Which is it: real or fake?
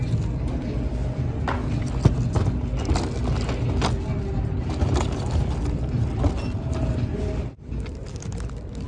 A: real